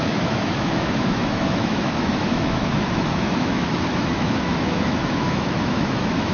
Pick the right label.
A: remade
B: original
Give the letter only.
A